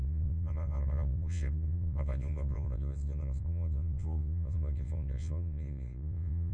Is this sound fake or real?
fake